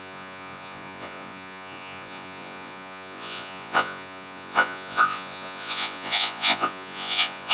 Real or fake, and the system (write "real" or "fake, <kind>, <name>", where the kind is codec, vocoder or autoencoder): fake, vocoder, Vocos